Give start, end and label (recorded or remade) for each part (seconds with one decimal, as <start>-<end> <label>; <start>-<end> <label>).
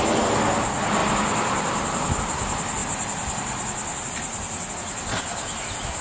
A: 0.0-6.0 recorded